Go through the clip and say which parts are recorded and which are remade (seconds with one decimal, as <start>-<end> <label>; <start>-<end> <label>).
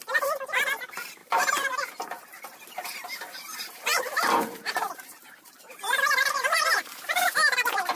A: 0.0-1.2 recorded; 1.2-2.2 remade; 2.2-3.3 recorded; 3.3-5.3 remade; 5.3-8.0 recorded